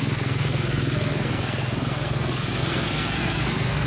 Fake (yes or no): yes